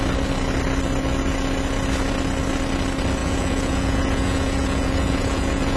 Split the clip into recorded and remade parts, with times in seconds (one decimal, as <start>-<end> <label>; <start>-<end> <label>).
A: 0.0-3.2 recorded; 3.2-5.8 remade